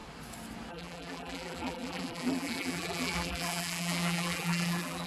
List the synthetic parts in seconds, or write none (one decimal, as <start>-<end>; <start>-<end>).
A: 0.7-5.1